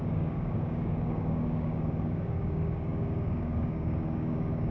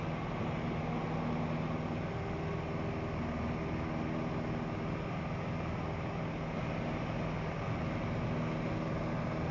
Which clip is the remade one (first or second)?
first